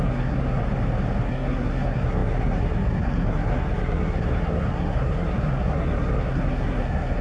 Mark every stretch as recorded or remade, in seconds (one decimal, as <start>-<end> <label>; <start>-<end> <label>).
0.0-0.6 remade; 0.6-1.3 recorded; 1.3-7.2 remade